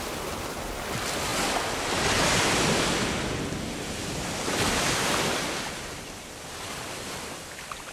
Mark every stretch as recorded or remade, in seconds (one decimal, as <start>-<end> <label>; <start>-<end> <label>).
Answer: 0.0-7.9 remade